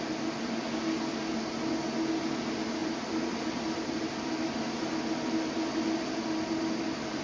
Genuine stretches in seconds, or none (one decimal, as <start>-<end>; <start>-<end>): 0.0-7.2